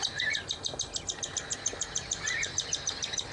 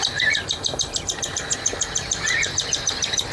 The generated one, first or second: second